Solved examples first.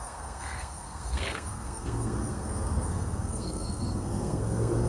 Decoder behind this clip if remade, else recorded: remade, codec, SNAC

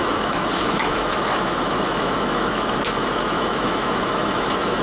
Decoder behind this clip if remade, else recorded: remade, autoencoder, DAC-VAE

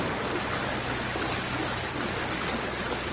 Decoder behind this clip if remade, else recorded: recorded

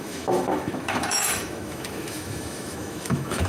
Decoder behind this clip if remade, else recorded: remade, autoencoder, DAC-VAE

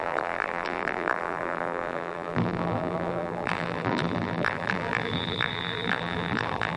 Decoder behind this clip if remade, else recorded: remade, vocoder, BigVGAN v2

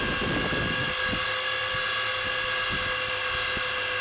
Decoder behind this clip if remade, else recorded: recorded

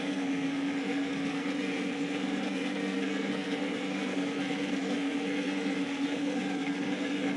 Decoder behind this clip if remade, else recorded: remade, codec, SNAC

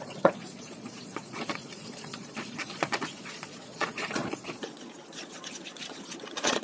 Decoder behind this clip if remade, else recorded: remade, vocoder, Vocos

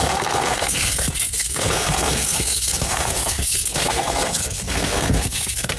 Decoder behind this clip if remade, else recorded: remade, codec, SNAC